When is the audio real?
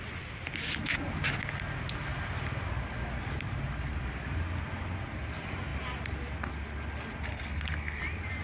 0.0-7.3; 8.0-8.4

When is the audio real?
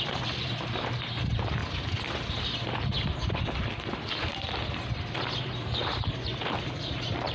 1.6-5.4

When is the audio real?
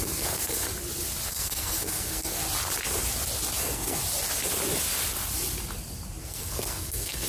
0.7-1.3; 2.4-3.6; 4.0-6.2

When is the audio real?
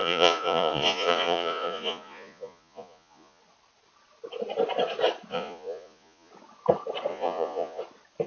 3.4-5.3; 6.3-7.1; 7.8-8.3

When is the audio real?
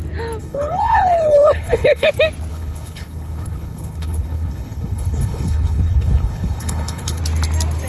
0.0-0.4; 2.1-2.5; 7.2-7.9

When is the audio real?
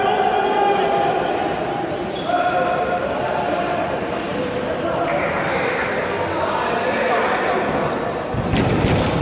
0.0-9.2